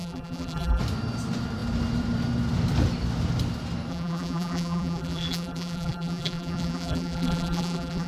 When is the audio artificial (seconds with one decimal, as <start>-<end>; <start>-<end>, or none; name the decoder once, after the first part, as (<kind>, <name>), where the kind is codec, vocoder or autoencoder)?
0.0-0.8 (vocoder, BigVGAN v2); 3.9-8.1